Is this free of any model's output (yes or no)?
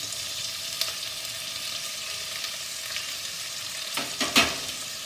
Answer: yes